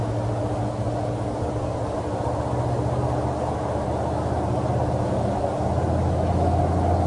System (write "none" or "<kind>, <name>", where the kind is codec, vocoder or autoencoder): none